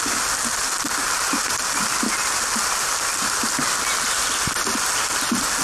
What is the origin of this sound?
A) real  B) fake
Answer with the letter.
A